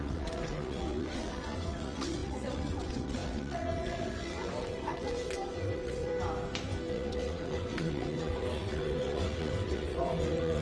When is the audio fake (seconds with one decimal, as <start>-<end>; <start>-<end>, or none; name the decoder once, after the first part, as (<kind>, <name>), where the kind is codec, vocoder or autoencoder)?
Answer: 0.0-6.1 (vocoder, WaveNeXt); 6.9-10.6